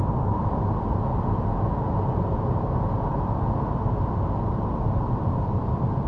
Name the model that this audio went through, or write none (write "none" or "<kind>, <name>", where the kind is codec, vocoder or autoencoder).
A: none